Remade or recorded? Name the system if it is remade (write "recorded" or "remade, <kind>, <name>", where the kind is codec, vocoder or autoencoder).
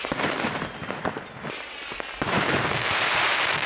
recorded